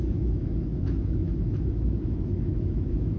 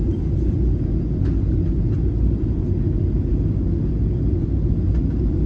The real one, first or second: second